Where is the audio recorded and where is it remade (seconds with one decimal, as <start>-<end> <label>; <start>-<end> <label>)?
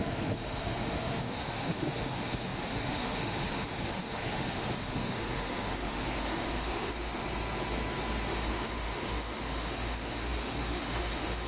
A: 0.0-7.2 remade; 7.2-8.3 recorded; 8.3-11.5 remade